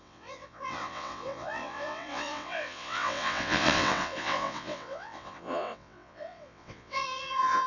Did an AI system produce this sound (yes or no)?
yes